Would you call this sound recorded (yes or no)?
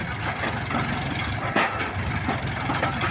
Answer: yes